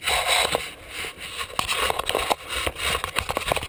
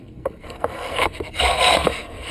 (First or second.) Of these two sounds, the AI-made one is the second